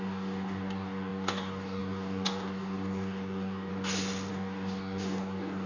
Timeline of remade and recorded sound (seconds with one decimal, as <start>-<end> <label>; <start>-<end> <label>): 0.0-3.7 remade; 3.7-4.3 recorded; 4.3-5.7 remade